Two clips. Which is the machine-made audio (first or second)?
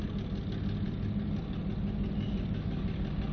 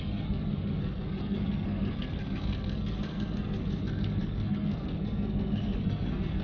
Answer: second